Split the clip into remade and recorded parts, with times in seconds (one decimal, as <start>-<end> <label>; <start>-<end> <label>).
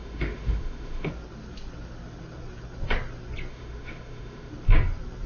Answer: 0.0-1.1 remade; 1.1-3.5 recorded; 3.5-4.5 remade; 4.5-5.3 recorded